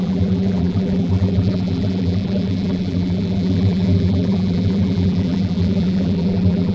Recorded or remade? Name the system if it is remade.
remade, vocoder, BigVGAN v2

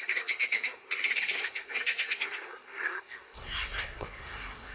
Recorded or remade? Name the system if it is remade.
remade, codec, SNAC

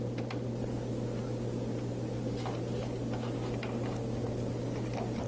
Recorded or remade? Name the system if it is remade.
recorded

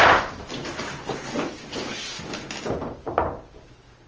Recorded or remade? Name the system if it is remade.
recorded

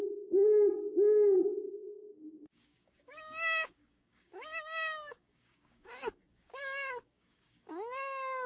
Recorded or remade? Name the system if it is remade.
remade, codec, DAC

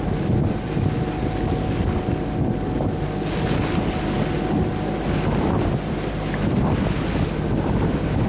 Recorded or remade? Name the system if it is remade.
recorded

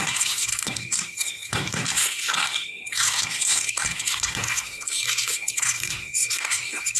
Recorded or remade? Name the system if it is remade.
remade, codec, SNAC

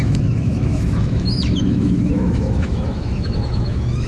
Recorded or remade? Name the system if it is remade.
remade, autoencoder, DAC-VAE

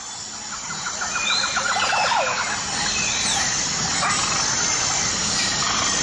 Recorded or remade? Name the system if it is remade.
recorded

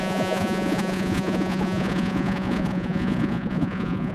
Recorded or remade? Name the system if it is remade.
remade, vocoder, Vocos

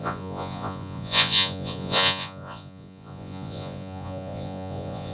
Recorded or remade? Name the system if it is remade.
remade, vocoder, Vocos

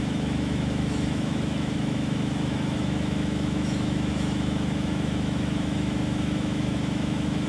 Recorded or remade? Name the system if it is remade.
remade, autoencoder, DAC-VAE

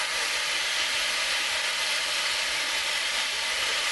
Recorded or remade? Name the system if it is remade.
recorded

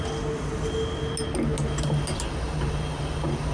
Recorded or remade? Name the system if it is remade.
recorded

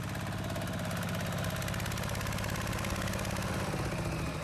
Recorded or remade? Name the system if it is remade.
recorded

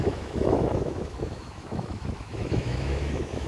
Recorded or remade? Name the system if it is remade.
remade, autoencoder, DAC-VAE